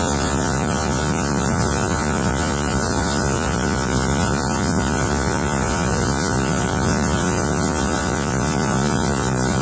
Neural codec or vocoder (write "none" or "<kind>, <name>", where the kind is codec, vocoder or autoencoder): vocoder, Vocos